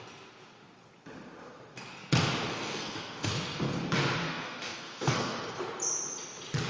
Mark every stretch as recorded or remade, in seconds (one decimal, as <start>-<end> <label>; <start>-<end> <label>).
0.0-2.5 recorded; 2.5-3.3 remade; 3.3-4.2 recorded; 4.2-5.6 remade; 5.6-6.7 recorded